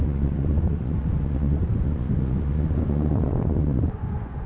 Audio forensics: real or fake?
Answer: fake